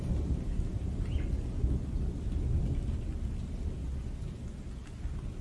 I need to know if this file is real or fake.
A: real